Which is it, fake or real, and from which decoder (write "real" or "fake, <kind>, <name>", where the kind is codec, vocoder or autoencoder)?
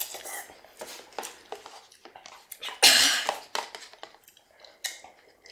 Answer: real